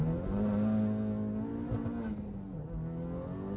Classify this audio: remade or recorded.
recorded